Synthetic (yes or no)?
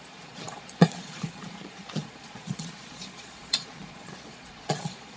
yes